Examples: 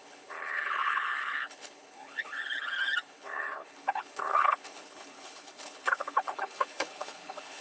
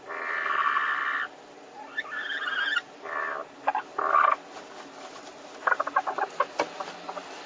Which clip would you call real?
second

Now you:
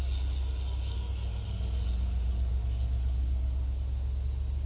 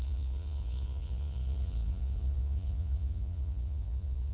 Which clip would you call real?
first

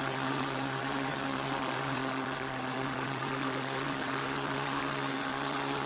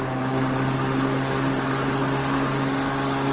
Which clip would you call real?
second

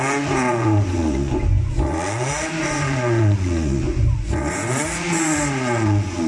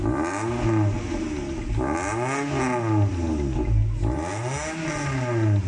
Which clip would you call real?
second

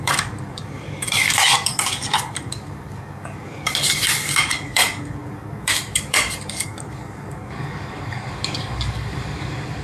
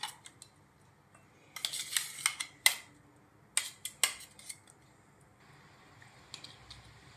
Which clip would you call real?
second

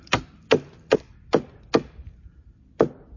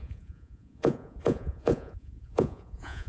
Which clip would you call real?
first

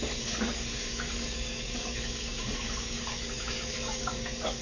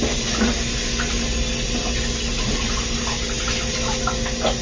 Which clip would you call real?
second